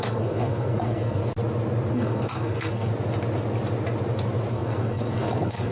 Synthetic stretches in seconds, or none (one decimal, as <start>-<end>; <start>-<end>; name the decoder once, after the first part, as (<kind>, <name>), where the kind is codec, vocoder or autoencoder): 0.0-1.2 (codec, SNAC); 1.9-2.9; 4.5-5.7